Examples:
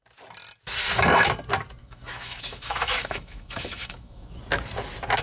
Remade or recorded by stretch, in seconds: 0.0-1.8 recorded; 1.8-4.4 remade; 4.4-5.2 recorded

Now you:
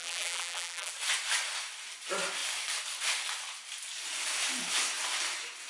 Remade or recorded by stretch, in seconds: 0.0-0.9 remade; 0.9-5.7 recorded

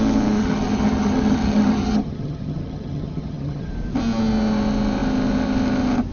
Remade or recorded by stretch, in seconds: 0.0-0.4 recorded; 0.4-3.7 remade; 3.7-6.1 recorded

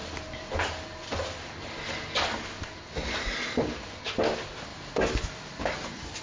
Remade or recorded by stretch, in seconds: 0.0-6.2 recorded

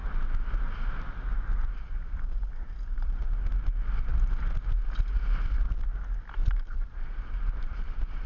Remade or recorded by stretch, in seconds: 0.0-1.5 recorded; 1.5-3.2 remade; 3.2-4.1 recorded; 4.1-4.7 remade; 4.7-6.4 recorded; 6.4-8.3 remade

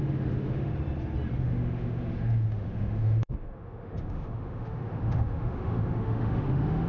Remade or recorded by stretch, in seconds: 0.0-0.7 remade; 0.7-1.4 recorded; 1.4-6.9 remade